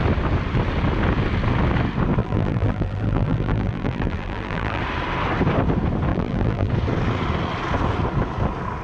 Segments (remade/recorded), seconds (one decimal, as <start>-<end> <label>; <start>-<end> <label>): 0.0-2.2 recorded; 2.2-4.8 remade; 4.8-6.1 recorded; 6.1-6.7 remade; 6.7-8.8 recorded